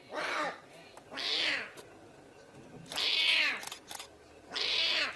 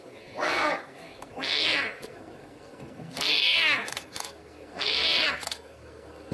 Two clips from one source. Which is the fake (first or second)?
second